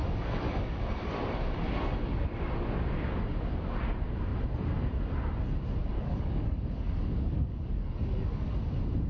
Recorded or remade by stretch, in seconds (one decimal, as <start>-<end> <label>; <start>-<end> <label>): 0.0-0.8 remade; 0.8-5.9 recorded; 5.9-8.5 remade; 8.5-9.1 recorded